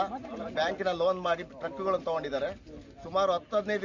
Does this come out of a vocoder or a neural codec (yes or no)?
no